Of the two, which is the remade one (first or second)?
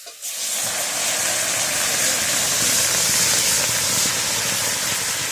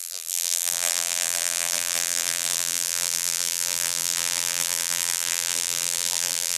second